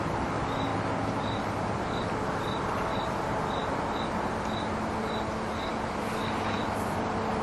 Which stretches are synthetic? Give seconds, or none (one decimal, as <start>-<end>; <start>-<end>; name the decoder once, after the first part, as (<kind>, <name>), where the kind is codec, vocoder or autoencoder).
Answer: none